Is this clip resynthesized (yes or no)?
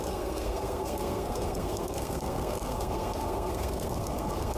yes